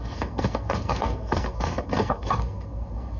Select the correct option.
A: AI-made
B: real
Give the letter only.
A